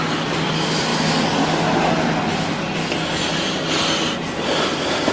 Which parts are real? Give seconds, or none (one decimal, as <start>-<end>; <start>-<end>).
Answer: 0.0-5.1